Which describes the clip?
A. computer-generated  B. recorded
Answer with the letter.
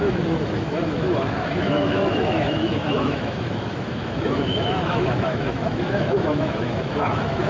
A